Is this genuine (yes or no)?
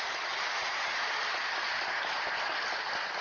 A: yes